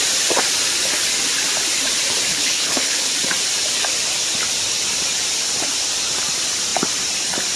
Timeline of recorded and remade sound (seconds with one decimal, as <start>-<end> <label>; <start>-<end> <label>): 0.0-2.3 recorded; 2.3-3.1 remade; 3.1-7.6 recorded